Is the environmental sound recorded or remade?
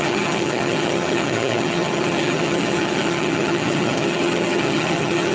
remade